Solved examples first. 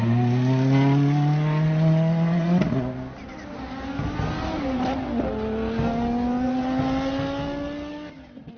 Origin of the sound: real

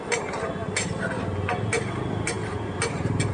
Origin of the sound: real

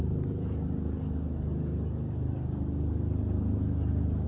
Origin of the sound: real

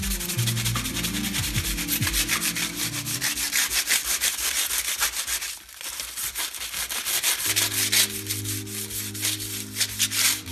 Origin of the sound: real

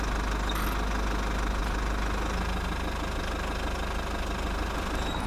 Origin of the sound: real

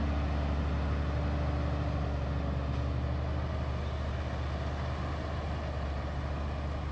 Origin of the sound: real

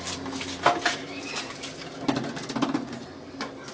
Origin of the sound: real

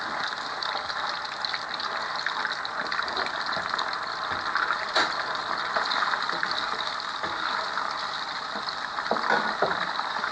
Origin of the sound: real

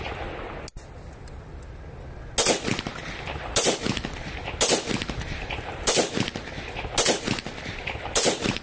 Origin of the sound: real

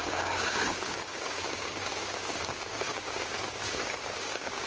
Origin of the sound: fake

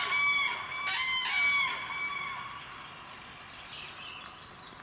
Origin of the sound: real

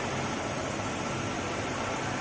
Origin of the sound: real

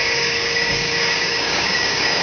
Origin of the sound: fake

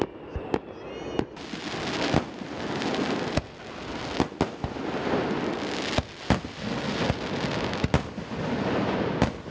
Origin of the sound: real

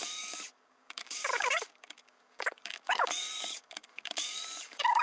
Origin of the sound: fake